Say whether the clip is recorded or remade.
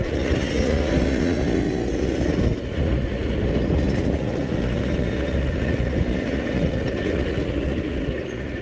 remade